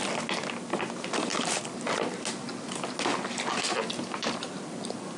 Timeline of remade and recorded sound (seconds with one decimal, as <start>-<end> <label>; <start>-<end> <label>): 0.0-5.2 recorded